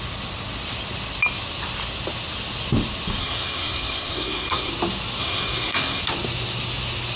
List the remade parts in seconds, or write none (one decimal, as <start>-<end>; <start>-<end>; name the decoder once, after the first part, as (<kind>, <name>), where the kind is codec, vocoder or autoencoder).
3.2-4.7 (codec, SNAC); 5.2-6.0